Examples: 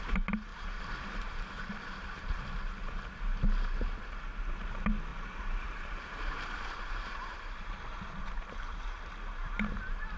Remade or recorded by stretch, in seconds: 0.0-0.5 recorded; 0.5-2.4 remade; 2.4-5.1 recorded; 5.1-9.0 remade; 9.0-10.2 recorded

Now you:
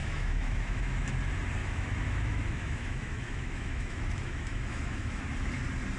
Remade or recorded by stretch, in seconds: 0.0-1.1 remade; 1.1-1.6 recorded; 1.6-5.2 remade; 5.2-6.0 recorded

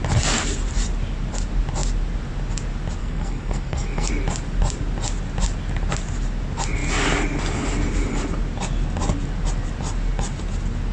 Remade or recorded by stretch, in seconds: 0.0-3.0 recorded; 3.0-4.1 remade; 4.1-10.9 recorded

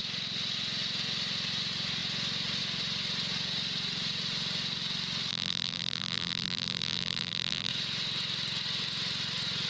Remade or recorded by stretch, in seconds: 0.0-5.3 recorded; 5.3-7.7 remade; 7.7-9.7 recorded

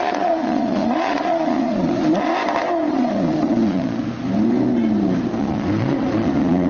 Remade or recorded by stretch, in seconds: 0.0-2.3 remade; 2.3-2.9 recorded; 2.9-4.0 remade; 4.0-5.3 recorded; 5.3-6.7 remade

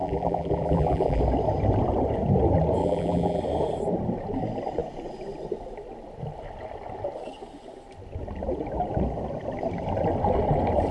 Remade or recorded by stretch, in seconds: 0.0-1.2 remade; 1.2-2.8 recorded; 2.8-3.4 remade; 3.4-10.9 recorded

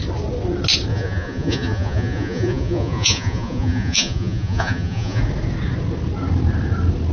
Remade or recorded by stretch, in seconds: 0.0-0.9 recorded; 0.9-5.2 remade; 5.2-7.1 recorded

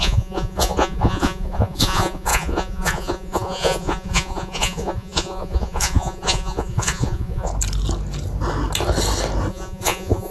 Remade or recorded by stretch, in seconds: 0.0-7.5 remade; 7.5-9.5 recorded; 9.5-10.3 remade